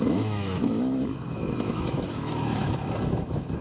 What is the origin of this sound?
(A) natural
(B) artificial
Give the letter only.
B